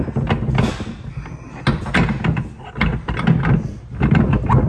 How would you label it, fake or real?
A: real